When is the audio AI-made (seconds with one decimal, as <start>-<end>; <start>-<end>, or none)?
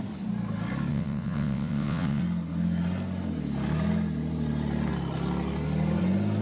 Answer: 0.9-2.2